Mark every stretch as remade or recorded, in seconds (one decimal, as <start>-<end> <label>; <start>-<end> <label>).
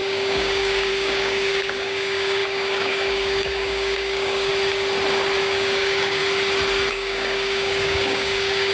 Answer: 0.0-4.5 remade; 4.5-5.4 recorded; 5.4-6.2 remade; 6.2-6.9 recorded; 6.9-8.7 remade